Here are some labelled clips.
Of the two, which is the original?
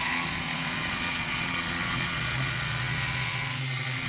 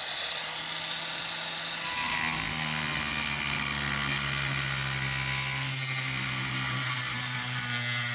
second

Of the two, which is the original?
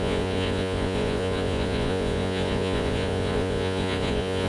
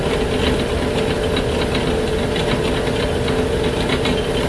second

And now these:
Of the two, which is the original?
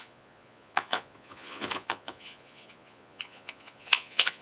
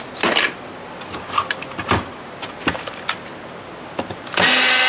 second